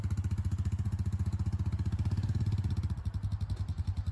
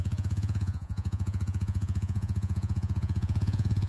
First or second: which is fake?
second